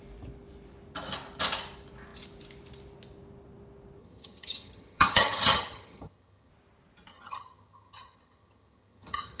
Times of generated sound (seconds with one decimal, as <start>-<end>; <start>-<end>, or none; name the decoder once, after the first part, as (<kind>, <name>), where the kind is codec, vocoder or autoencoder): 4.0-6.5 (vocoder, HiFi-GAN); 7.1-9.4